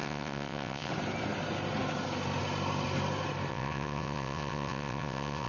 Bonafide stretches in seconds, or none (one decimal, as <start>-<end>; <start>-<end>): 0.9-3.5